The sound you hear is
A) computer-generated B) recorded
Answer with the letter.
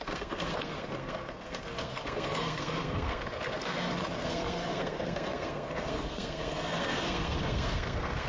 A